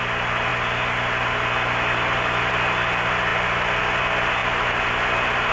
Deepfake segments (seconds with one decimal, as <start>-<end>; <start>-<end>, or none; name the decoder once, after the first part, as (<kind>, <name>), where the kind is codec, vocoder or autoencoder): none